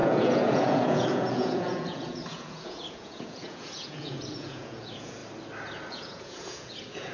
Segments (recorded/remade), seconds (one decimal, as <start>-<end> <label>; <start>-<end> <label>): 0.0-5.2 remade; 5.2-5.9 recorded; 5.9-7.1 remade